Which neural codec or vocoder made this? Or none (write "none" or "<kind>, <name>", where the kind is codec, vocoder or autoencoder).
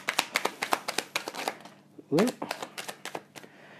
none